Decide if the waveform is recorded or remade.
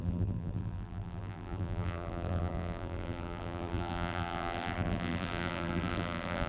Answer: remade